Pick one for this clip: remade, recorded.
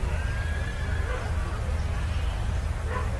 recorded